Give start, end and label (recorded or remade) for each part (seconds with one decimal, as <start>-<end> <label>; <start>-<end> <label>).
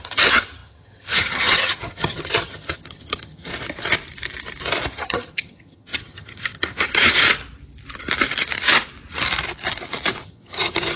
0.0-3.5 remade; 3.5-4.9 recorded; 4.9-7.2 remade; 7.2-10.2 recorded; 10.2-11.0 remade